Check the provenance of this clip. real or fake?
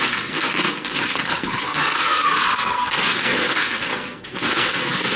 fake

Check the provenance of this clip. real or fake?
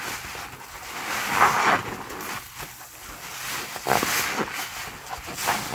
real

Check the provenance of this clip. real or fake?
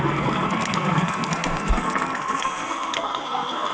fake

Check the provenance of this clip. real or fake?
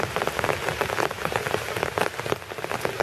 real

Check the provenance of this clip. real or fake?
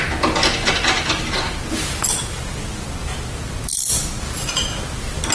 real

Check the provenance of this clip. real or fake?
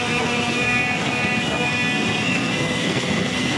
fake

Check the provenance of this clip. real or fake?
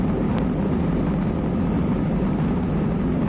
real